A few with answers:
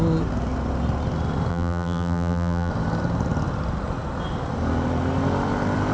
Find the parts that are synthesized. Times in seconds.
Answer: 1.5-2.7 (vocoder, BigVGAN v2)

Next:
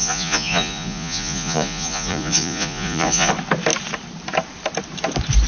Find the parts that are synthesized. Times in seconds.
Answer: 0.0-3.3 (vocoder, Vocos)

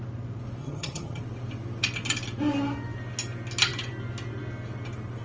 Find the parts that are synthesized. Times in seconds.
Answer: 0.6-1.2 (vocoder, HiFi-GAN)

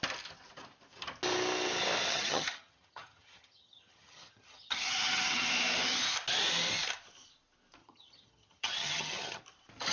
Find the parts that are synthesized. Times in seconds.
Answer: 2.1-5.5 (vocoder, HiFi-GAN); 7.8-9.4

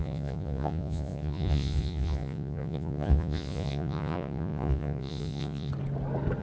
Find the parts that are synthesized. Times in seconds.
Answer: 0.0-5.7 (vocoder, Vocos)

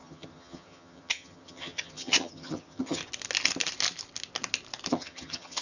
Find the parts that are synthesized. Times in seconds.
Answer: 0.0-3.0 (vocoder, HiFi-GAN); 4.9-5.6

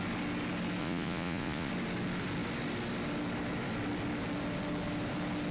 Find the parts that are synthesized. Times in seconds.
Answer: 0.8-1.7 (vocoder, Vocos)

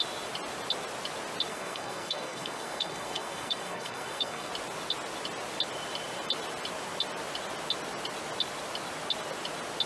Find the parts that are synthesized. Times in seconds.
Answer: 1.5-4.5 (codec, SNAC)